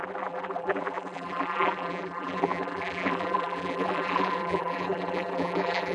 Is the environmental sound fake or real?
fake